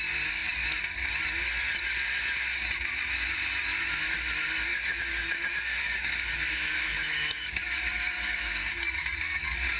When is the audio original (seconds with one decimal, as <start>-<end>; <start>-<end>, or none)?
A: 0.0-4.7